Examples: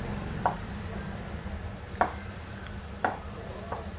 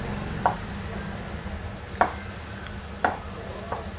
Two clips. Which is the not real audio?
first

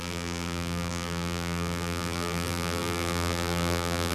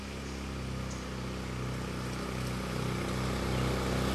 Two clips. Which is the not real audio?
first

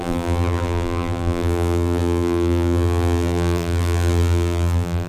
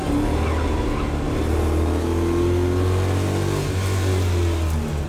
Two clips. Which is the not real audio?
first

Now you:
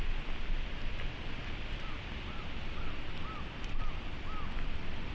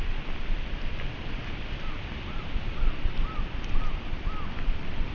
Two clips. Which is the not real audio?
second